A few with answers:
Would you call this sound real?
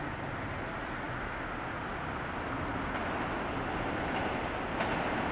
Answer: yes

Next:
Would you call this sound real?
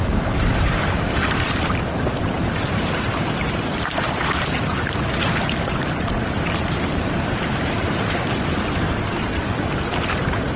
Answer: no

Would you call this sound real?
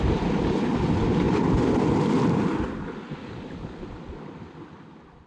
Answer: yes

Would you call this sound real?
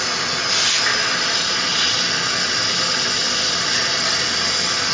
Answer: yes